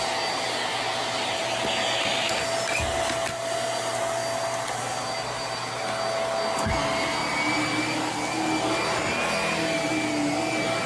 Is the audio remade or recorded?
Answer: recorded